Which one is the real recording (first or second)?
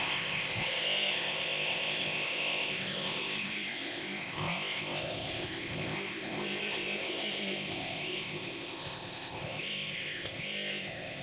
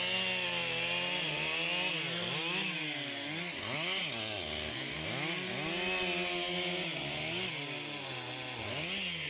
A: second